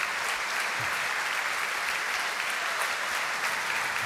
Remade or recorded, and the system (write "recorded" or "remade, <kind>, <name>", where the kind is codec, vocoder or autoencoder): recorded